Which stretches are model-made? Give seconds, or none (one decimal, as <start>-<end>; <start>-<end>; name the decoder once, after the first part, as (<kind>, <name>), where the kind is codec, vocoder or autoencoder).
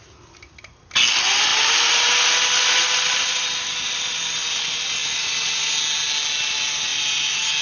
1.5-2.2 (vocoder, BigVGAN v2)